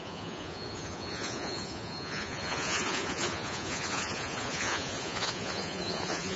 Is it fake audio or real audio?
fake